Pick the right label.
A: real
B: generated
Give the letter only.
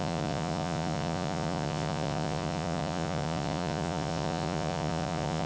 B